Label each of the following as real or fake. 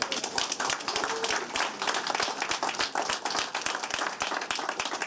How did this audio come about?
real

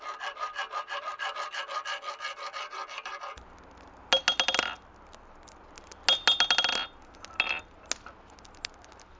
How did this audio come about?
real